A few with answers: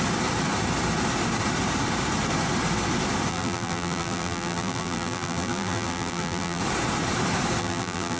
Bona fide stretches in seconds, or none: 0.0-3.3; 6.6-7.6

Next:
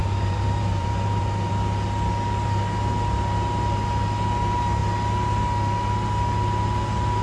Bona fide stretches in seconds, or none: 1.5-7.2

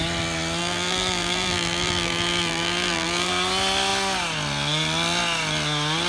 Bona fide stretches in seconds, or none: 0.0-0.6; 3.3-6.1